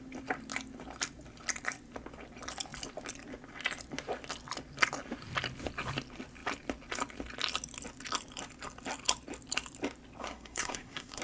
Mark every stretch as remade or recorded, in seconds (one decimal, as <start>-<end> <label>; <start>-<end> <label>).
0.0-10.2 recorded; 10.2-11.2 remade